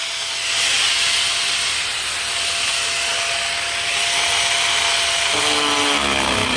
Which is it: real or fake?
real